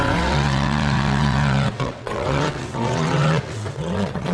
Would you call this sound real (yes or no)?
no